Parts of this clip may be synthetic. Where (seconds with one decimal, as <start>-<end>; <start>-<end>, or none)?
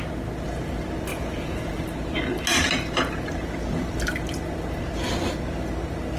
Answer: 1.1-1.8